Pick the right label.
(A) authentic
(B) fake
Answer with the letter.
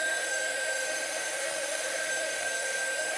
B